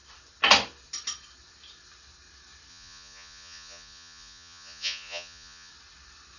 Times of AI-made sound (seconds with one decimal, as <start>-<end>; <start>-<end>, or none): 2.7-5.7